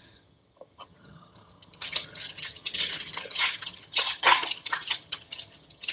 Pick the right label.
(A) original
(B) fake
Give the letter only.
B